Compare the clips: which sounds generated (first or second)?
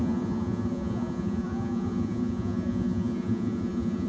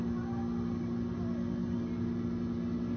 first